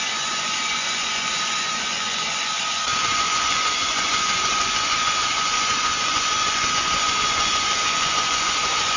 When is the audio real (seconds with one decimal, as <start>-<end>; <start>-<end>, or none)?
none